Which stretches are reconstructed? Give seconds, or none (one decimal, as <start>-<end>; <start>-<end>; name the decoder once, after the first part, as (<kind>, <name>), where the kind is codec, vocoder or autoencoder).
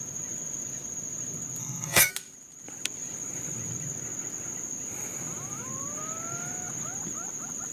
1.6-2.1 (codec, SNAC)